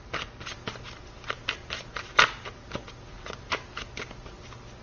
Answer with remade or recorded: recorded